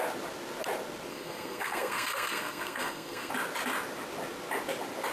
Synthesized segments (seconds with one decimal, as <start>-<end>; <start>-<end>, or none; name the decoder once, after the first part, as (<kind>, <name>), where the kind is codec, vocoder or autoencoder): 1.1-3.3 (codec, SNAC)